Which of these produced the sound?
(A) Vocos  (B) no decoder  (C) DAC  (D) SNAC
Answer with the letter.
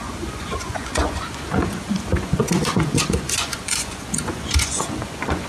A